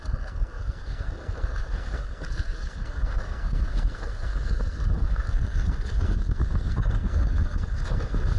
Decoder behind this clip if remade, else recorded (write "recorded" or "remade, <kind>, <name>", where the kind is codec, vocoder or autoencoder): remade, codec, SNAC